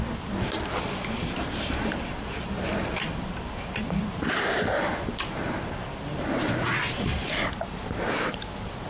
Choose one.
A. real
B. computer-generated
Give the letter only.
B